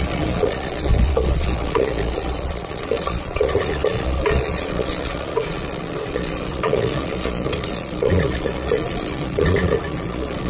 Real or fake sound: fake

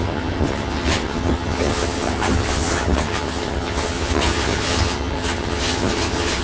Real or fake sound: fake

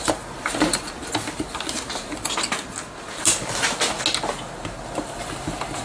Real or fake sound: real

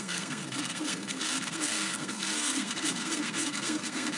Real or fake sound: fake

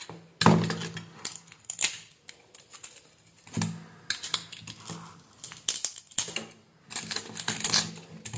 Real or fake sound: real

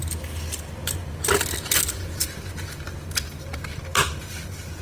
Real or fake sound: fake